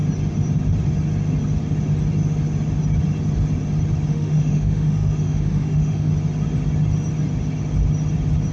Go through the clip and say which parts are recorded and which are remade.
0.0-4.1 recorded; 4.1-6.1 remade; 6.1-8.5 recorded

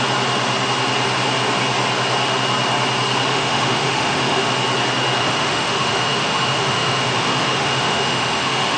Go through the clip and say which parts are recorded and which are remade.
0.0-3.3 recorded; 3.3-4.5 remade; 4.5-5.2 recorded; 5.2-8.8 remade

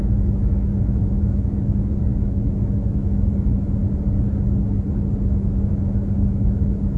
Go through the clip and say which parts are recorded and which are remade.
0.0-3.8 remade; 3.8-5.3 recorded; 5.3-7.0 remade

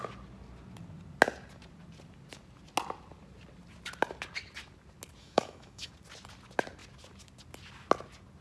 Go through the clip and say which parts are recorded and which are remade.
0.0-5.2 recorded; 5.2-5.9 remade; 5.9-8.4 recorded

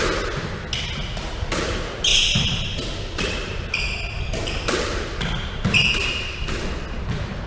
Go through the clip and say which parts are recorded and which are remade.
0.0-7.5 recorded

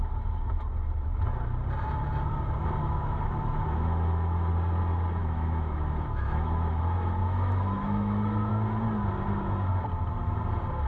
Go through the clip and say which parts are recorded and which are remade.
0.0-2.8 recorded; 2.8-4.5 remade; 4.5-5.2 recorded; 5.2-6.8 remade; 6.8-7.2 recorded; 7.2-8.5 remade; 8.5-10.9 recorded